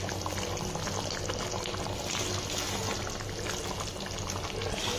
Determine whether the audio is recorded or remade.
recorded